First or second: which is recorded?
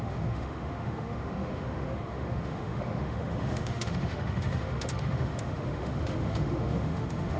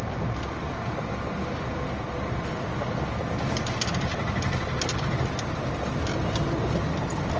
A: second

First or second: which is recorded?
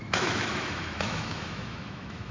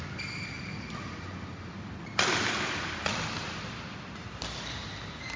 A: second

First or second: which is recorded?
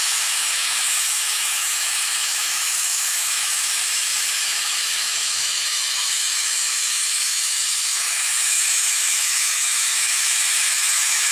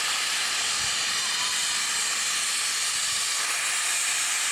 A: second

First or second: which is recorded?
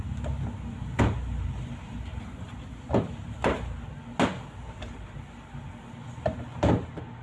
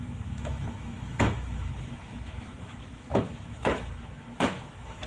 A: first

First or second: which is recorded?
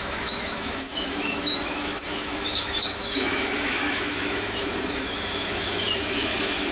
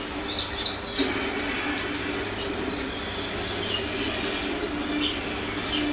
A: second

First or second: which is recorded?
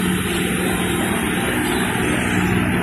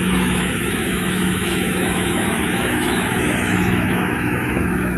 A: first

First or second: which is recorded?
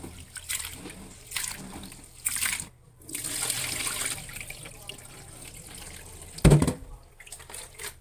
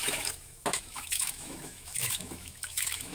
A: first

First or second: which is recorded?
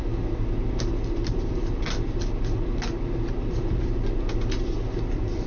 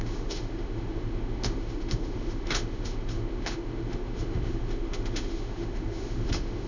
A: first